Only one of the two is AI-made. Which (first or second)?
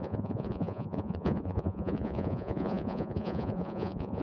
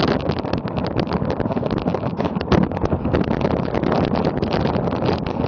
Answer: first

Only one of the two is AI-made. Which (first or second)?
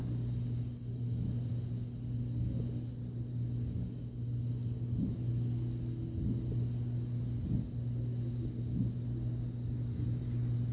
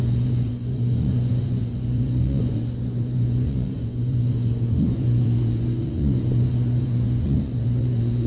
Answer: second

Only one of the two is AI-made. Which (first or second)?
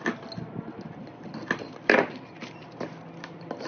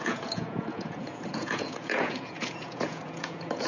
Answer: second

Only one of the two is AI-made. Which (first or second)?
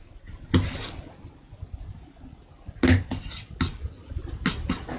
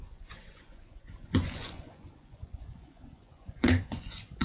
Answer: second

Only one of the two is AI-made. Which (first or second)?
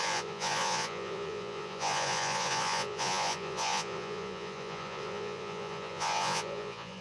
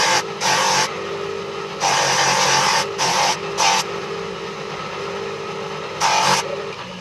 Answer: first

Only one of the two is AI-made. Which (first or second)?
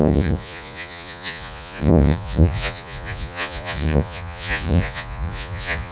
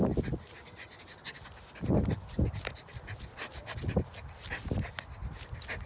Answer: first